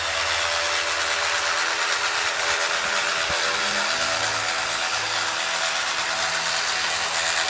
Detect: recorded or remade recorded